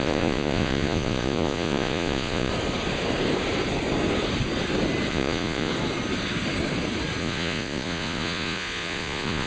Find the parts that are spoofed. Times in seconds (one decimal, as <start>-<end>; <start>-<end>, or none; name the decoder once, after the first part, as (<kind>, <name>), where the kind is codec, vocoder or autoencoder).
0.0-2.5 (vocoder, Vocos); 5.1-5.7; 7.2-9.5